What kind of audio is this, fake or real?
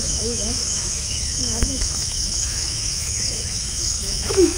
fake